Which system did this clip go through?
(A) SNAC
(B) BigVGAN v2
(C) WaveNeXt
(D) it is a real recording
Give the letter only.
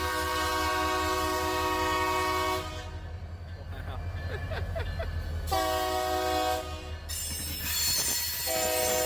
D